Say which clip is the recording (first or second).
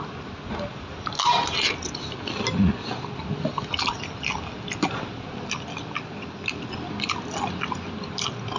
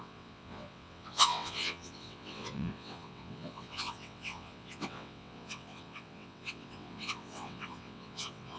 first